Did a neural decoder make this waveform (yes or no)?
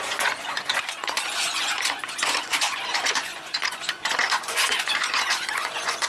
yes